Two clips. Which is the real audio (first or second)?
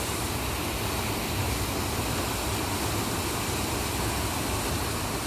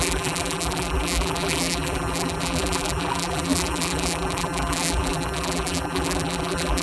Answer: first